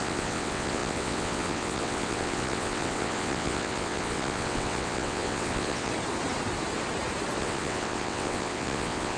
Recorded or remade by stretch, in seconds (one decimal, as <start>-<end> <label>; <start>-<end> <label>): 0.0-5.9 remade; 5.9-7.4 recorded; 7.4-9.2 remade